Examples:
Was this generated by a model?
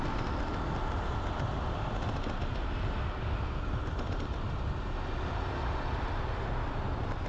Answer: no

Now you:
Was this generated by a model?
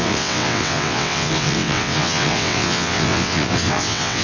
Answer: yes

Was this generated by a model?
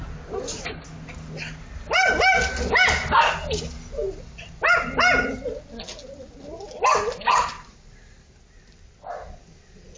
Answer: no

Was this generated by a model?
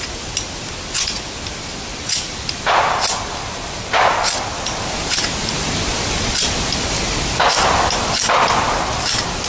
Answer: no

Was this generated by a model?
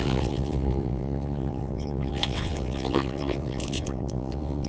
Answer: yes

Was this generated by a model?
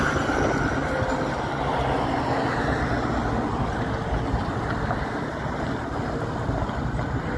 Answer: no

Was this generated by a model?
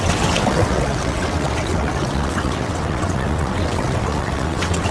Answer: yes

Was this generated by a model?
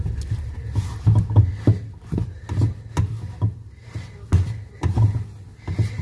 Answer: no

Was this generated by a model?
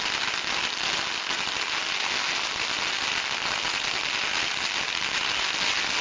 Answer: no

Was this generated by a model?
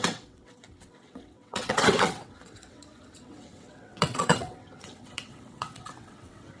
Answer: yes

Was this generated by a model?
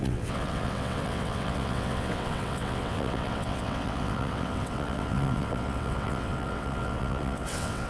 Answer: yes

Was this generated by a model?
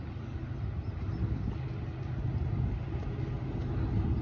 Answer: no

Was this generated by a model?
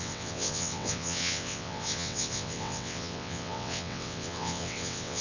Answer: yes